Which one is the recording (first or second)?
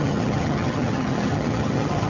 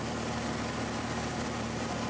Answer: second